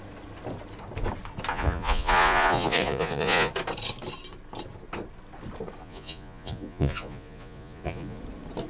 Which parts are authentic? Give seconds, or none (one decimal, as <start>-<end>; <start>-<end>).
0.0-1.5; 3.5-5.8; 8.2-8.7